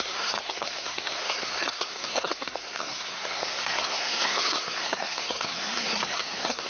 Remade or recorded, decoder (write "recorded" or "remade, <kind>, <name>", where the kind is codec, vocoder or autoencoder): remade, codec, SNAC